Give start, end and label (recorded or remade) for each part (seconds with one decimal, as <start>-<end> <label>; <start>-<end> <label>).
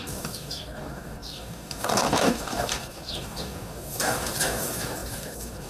0.0-5.7 remade